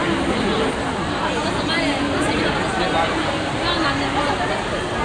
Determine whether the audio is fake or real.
real